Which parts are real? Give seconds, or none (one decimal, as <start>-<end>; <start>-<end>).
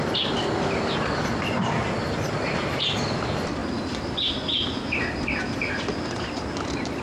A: 0.0-3.6; 4.3-7.0